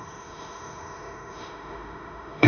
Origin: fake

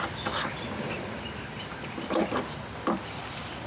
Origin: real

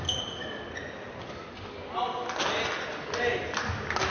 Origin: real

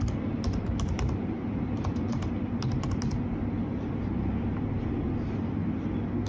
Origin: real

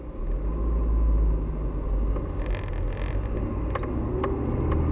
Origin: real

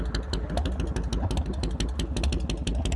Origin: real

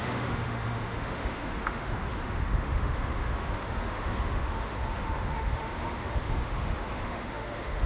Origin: fake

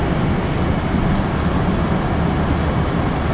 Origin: real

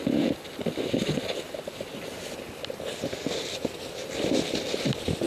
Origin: real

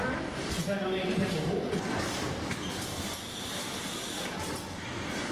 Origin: real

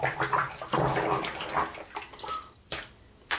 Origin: real